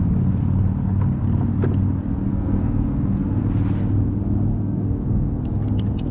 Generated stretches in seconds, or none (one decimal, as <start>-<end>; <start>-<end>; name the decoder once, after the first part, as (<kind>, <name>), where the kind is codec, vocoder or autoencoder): 2.3-3.4 (codec, SNAC); 4.5-5.4